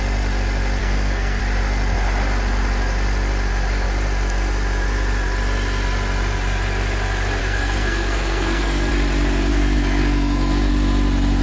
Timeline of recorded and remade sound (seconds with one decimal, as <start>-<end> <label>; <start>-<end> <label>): 0.0-0.8 recorded; 0.8-1.4 remade; 1.4-7.4 recorded; 7.4-8.9 remade; 8.9-9.5 recorded; 9.5-10.7 remade; 10.7-11.4 recorded